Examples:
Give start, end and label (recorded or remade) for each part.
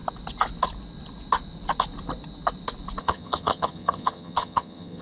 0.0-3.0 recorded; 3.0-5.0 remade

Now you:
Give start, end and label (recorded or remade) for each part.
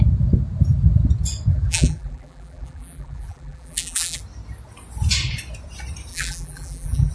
0.0-1.5 recorded; 1.5-4.2 remade; 4.2-6.1 recorded; 6.1-7.1 remade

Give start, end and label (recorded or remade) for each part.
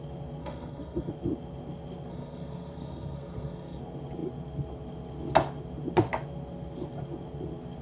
0.0-0.4 recorded; 0.4-1.1 remade; 1.1-2.1 recorded; 2.1-3.8 remade; 3.8-7.8 recorded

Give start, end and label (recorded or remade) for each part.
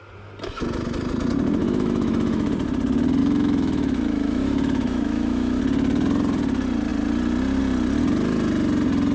0.0-1.6 recorded; 1.6-2.5 remade; 2.5-3.2 recorded; 3.2-5.6 remade; 5.6-9.1 recorded